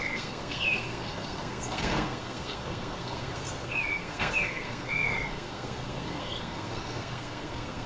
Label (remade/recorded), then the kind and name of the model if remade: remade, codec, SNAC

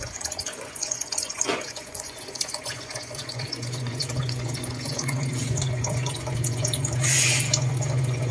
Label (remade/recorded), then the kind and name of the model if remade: remade, vocoder, Vocos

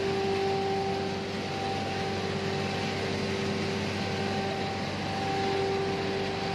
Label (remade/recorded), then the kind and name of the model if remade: recorded